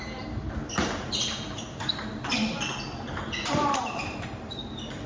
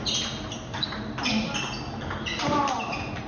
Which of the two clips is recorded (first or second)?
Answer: second